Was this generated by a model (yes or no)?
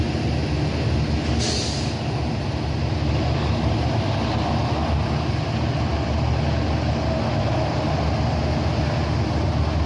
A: no